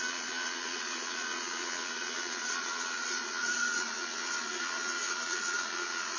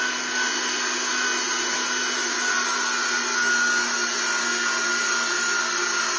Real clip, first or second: second